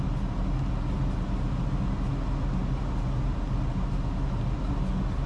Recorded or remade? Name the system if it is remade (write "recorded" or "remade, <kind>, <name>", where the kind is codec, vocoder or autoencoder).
recorded